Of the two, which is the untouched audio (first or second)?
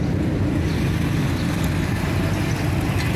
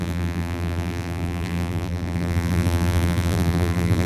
first